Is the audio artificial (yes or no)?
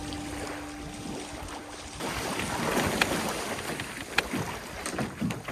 no